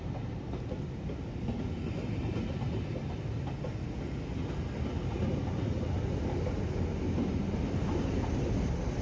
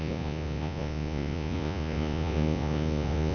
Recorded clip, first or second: first